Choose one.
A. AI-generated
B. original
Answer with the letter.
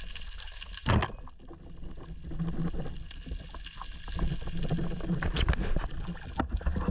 B